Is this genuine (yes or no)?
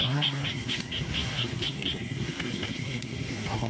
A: no